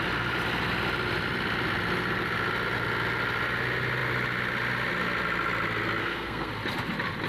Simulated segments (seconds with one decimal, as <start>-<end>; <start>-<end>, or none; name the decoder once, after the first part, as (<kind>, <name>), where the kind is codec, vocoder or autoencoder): 6.0-6.5 (codec, SNAC)